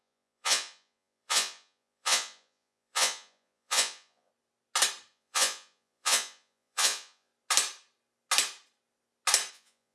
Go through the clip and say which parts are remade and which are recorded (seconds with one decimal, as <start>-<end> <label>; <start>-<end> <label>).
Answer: 0.0-4.3 remade; 4.3-5.1 recorded; 5.1-7.3 remade; 7.3-9.5 recorded; 9.5-9.9 remade

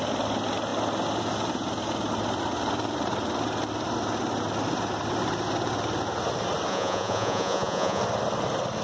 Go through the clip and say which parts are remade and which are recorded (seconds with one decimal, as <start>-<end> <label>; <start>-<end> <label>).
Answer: 0.0-6.7 recorded; 6.7-8.0 remade; 8.0-8.8 recorded

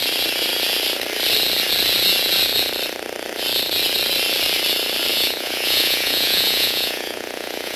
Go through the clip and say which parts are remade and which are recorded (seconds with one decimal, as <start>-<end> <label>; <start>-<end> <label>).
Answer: 0.0-5.1 recorded; 5.1-7.8 remade

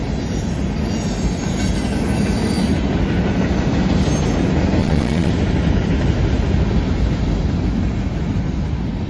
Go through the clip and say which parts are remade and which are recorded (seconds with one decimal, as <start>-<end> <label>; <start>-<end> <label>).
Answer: 0.0-4.8 recorded; 4.8-5.3 remade; 5.3-9.1 recorded